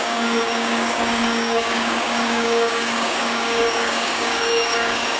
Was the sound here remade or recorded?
remade